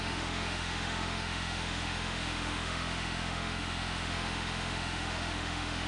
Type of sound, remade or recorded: remade